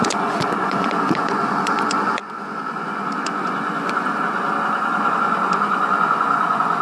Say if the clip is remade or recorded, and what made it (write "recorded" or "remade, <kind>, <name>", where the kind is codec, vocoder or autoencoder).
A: remade, vocoder, Vocos